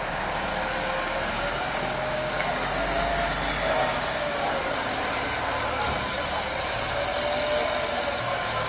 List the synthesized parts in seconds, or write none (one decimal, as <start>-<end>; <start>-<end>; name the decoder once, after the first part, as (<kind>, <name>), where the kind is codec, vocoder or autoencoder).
0.0-0.5 (codec, DAC); 1.3-3.1; 8.2-8.7